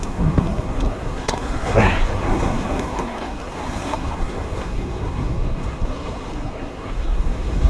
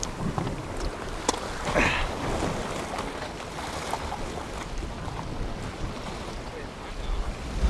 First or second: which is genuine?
second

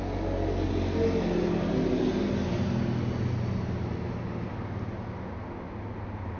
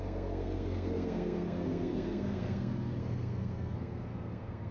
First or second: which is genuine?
first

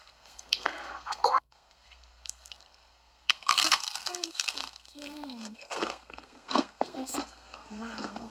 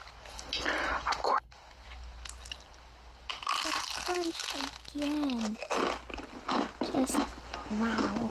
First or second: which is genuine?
second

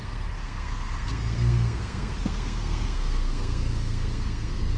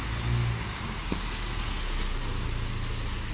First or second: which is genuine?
second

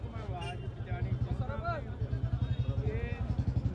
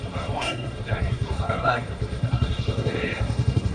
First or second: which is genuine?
first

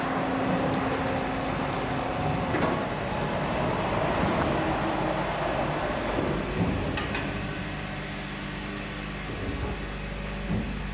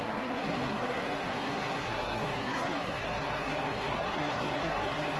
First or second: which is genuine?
first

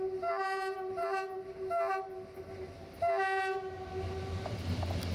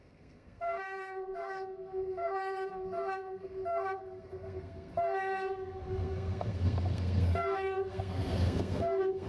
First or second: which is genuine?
first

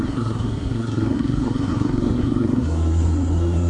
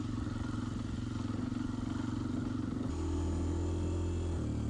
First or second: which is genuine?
second